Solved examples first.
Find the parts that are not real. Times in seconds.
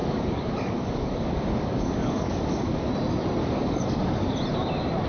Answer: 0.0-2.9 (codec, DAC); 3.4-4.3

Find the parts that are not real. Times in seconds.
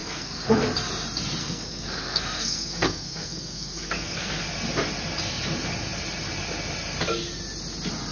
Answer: 0.0-0.6 (codec, SNAC); 1.4-4.4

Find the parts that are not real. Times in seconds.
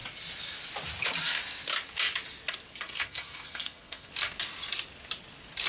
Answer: 2.8-4.1 (codec, SNAC)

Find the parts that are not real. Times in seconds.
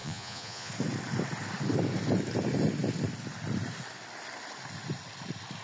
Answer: 0.0-0.7 (vocoder, Vocos)